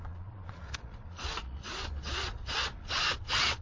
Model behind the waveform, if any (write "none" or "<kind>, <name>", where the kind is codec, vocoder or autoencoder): vocoder, Vocos